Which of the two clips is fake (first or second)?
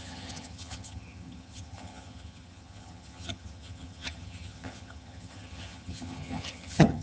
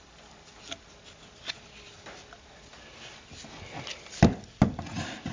first